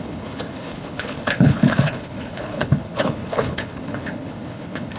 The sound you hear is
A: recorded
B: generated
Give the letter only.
B